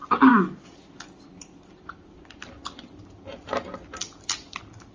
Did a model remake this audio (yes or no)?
no